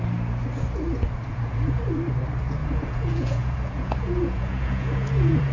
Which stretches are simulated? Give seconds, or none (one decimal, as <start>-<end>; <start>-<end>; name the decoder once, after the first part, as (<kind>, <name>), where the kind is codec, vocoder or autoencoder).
1.3-1.8 (vocoder, Vocos); 2.6-5.5